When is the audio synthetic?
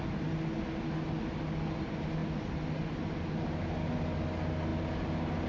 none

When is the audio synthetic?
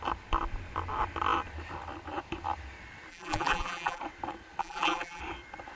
3.1-4.0 (vocoder, BigVGAN v2); 4.6-5.2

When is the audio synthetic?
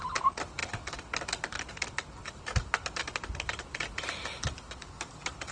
2.2-3.0 (vocoder, BigVGAN v2)